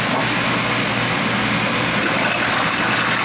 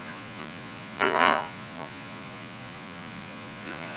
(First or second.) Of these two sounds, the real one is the first